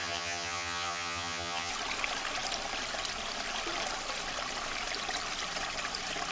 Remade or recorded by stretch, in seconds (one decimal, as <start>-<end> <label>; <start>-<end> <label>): 0.0-1.7 remade; 1.7-6.3 recorded